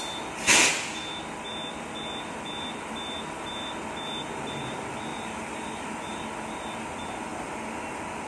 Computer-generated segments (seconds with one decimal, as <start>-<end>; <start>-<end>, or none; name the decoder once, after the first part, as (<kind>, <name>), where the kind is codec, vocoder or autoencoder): 5.1-6.2 (vocoder, BigVGAN v2)